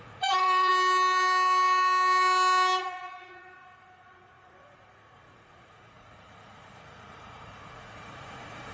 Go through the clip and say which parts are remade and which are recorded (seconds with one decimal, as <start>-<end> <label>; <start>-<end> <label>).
0.0-0.7 remade; 0.7-2.8 recorded; 2.8-8.7 remade